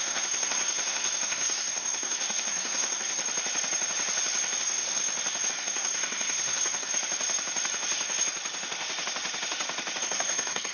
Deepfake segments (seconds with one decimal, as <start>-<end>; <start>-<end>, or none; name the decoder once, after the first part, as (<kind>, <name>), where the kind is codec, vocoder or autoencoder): 0.0-3.2 (codec, SNAC); 4.6-5.0; 5.5-6.9; 10.0-10.7